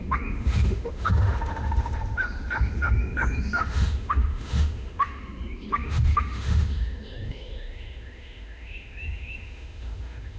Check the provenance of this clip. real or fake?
fake